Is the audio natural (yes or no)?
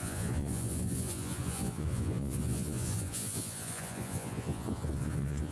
no